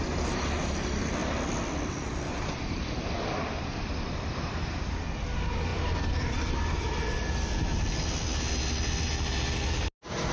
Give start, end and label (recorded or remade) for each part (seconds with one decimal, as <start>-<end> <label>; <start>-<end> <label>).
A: 0.0-1.2 recorded; 1.2-4.8 remade; 4.8-5.7 recorded; 5.7-6.5 remade; 6.5-10.3 recorded